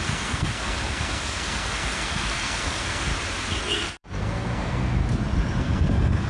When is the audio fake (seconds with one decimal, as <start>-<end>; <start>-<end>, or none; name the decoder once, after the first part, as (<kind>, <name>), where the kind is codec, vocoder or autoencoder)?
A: 0.0-3.1 (codec, SNAC); 3.6-5.0; 5.6-6.3